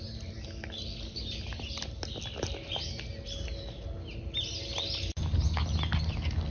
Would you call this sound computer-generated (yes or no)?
no